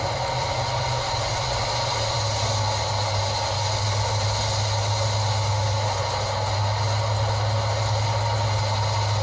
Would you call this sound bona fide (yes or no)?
yes